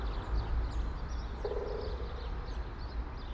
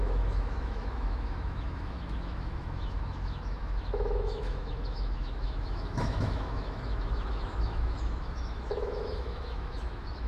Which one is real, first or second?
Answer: first